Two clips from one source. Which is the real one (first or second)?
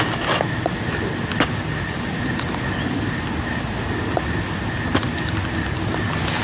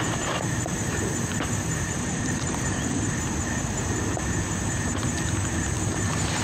first